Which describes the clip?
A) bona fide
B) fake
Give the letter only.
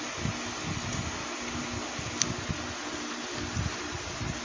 A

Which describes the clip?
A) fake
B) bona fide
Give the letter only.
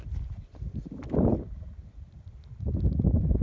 B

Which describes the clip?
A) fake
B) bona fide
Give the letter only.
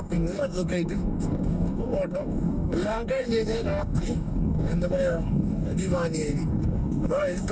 A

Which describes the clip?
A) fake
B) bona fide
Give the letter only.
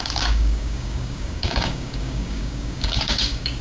A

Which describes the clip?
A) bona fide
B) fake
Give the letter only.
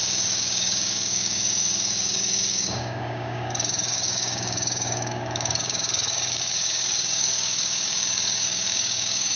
B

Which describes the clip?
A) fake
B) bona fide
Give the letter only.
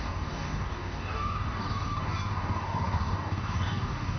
A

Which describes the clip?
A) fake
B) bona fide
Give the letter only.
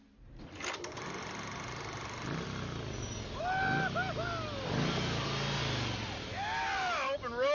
B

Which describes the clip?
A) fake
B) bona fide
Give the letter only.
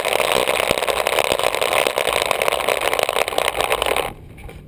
B